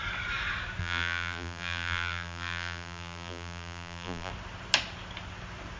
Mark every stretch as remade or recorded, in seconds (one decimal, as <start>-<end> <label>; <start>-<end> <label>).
0.0-0.8 recorded; 0.8-4.3 remade; 4.3-5.8 recorded